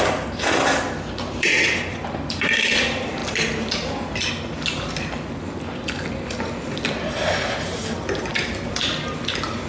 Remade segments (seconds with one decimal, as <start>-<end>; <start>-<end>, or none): 0.0-3.2; 5.6-9.7